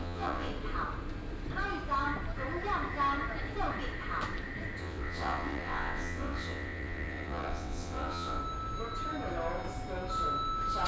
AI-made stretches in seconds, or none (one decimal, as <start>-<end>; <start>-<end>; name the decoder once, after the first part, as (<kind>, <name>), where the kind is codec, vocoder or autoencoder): 0.0-0.5 (vocoder, WaveNeXt); 4.8-8.4